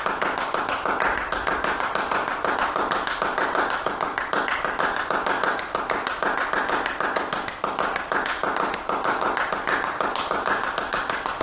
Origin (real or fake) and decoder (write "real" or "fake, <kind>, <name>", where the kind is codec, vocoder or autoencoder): real